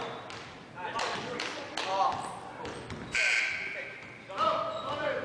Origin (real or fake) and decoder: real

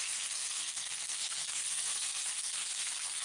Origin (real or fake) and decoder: fake, codec, SNAC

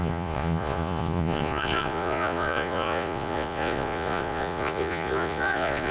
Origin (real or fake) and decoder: fake, vocoder, Vocos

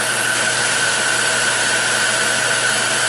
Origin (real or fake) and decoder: real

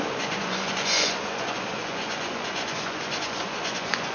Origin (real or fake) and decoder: fake, vocoder, Vocos